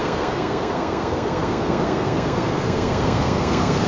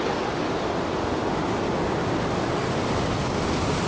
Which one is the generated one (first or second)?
first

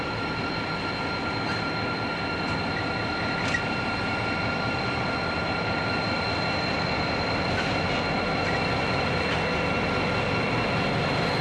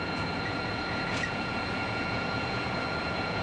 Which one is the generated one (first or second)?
second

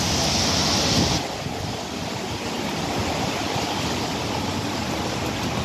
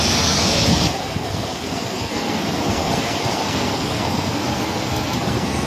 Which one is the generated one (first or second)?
second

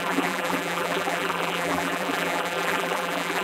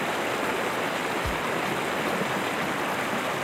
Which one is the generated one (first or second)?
first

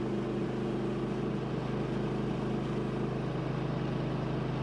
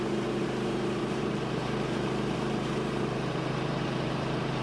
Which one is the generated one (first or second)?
second